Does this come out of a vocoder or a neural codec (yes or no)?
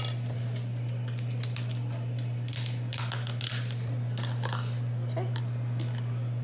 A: no